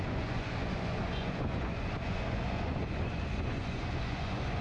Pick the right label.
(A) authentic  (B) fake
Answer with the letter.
B